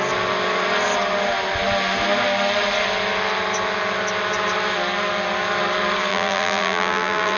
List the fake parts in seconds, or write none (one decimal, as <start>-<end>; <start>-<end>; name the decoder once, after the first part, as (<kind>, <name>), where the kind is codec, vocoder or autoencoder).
6.1-7.4 (vocoder, BigVGAN v2)